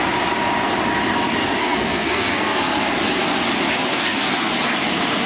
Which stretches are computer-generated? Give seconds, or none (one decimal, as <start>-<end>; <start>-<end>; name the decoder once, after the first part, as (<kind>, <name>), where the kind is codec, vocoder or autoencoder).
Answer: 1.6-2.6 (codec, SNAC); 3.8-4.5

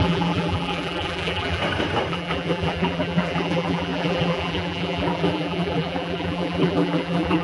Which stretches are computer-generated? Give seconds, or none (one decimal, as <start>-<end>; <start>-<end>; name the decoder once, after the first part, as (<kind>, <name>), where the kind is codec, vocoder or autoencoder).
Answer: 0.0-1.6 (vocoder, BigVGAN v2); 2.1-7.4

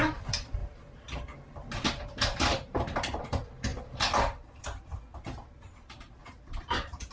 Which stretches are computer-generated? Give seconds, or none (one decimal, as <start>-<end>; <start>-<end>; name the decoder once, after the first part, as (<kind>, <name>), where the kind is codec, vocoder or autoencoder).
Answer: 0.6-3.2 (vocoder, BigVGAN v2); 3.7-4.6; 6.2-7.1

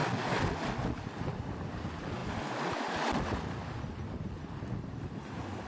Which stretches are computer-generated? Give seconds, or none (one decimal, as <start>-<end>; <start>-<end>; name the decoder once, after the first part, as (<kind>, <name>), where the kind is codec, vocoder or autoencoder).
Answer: none

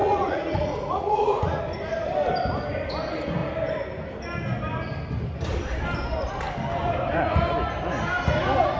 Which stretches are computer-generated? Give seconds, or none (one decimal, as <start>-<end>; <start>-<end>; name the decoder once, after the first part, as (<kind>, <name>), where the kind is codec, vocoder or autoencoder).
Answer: 0.0-1.6 (vocoder, Vocos)

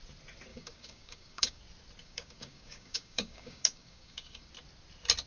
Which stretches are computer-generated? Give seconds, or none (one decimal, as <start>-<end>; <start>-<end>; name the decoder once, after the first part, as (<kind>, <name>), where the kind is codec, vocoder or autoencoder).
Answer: 0.5-1.6 (codec, DAC); 2.0-4.5